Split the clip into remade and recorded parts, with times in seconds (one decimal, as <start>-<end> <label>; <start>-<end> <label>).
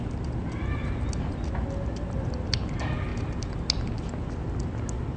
0.0-5.2 recorded